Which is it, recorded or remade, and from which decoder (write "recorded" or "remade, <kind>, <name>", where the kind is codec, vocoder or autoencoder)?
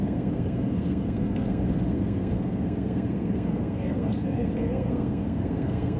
remade, codec, SNAC